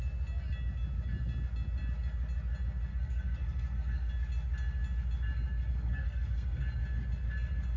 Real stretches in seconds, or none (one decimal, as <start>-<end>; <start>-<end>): 0.0-2.9; 4.1-5.7; 6.6-7.8